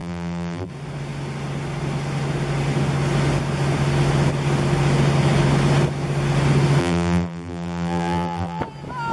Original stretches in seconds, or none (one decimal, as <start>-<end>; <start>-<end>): 0.7-6.8; 8.6-9.1